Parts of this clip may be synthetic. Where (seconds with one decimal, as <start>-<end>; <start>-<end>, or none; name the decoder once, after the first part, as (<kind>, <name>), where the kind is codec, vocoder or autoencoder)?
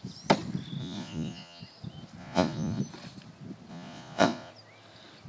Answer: 0.8-1.6 (vocoder, Vocos); 2.2-2.8; 3.7-4.5